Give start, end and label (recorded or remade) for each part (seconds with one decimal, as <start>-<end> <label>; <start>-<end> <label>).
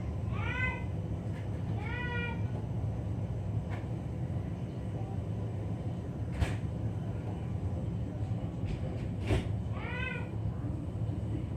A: 0.0-11.6 recorded